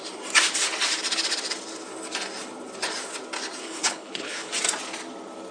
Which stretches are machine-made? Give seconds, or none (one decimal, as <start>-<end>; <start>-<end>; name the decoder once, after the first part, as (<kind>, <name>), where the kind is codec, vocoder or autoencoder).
3.6-4.5 (codec, HILCodec)